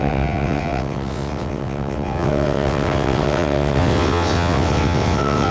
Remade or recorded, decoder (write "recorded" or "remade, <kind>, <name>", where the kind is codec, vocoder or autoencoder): remade, vocoder, WaveNeXt